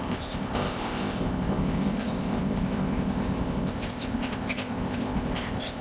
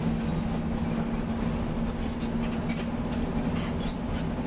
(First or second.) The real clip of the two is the second